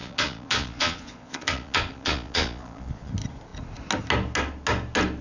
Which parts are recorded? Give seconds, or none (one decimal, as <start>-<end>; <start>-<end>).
3.1-5.2